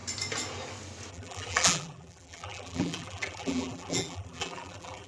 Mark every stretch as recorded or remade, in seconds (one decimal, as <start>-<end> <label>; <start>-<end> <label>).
0.0-1.1 recorded; 1.1-5.1 remade